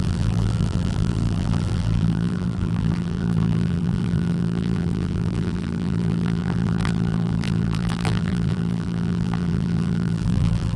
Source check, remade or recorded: remade